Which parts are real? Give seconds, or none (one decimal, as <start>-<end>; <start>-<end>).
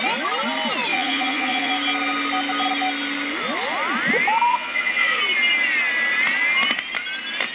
0.0-0.9; 1.7-4.5; 5.2-7.5